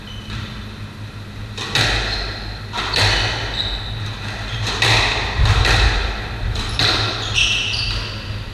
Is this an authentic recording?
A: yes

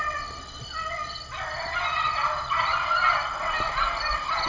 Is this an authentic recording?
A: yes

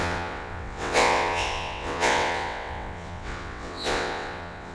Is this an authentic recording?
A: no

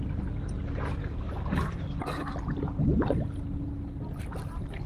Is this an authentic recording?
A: yes